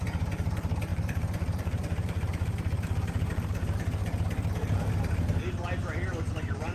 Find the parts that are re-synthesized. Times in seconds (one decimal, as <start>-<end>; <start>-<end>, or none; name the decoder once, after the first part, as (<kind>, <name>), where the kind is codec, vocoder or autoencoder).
0.0-4.0 (vocoder, BigVGAN v2); 6.3-6.7